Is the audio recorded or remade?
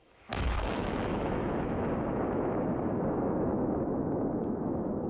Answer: remade